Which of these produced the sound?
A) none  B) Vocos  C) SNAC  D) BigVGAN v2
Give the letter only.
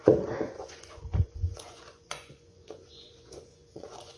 B